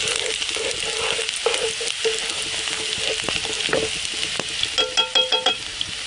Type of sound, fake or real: real